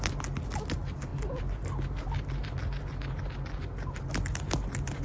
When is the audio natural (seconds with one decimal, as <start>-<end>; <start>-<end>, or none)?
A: 0.0-5.0